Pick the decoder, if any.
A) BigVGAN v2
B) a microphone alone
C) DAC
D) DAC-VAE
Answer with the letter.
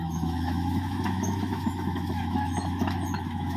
D